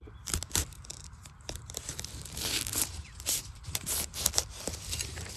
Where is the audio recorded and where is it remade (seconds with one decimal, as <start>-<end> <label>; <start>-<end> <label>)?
0.0-0.9 recorded; 0.9-4.1 remade; 4.1-5.4 recorded